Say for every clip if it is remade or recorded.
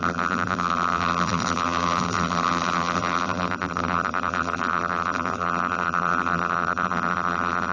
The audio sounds remade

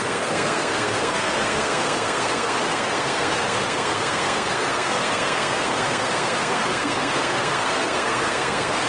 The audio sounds remade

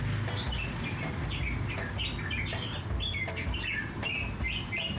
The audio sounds recorded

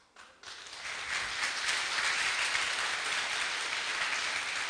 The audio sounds recorded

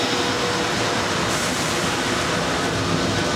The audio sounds recorded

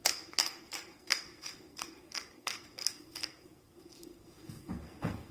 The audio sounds remade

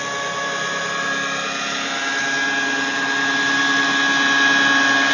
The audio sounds recorded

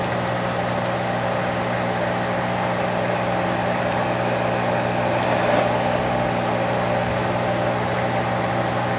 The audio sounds recorded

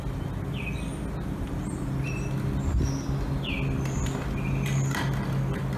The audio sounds recorded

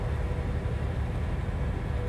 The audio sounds recorded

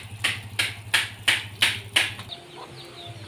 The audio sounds recorded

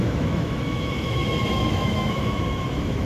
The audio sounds remade